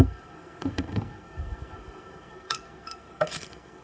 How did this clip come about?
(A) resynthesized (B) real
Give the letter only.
A